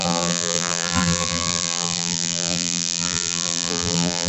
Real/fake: fake